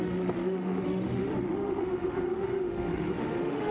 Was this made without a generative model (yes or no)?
no